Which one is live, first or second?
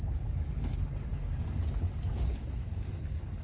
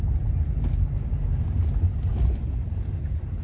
second